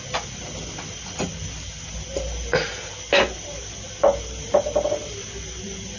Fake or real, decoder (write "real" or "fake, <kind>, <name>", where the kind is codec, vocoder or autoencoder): real